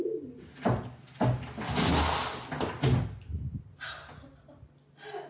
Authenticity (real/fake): real